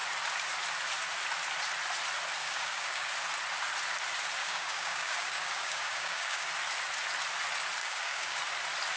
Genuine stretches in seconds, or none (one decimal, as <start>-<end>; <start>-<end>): 0.0-2.4; 3.1-4.4; 6.5-7.8; 8.4-9.0